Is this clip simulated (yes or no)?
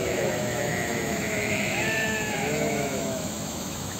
yes